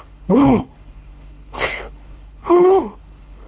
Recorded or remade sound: remade